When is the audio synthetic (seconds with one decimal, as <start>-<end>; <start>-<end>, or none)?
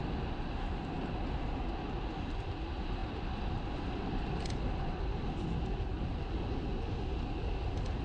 none